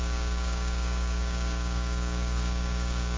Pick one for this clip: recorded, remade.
remade